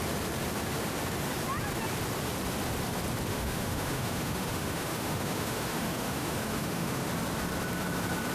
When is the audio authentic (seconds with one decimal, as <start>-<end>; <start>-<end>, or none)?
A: 0.0-3.3; 7.1-8.3